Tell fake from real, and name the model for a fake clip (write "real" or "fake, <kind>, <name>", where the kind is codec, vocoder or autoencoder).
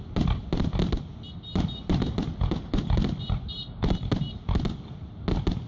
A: real